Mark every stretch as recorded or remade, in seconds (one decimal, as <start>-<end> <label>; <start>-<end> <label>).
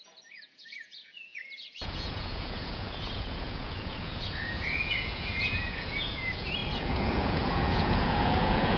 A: 0.0-8.8 remade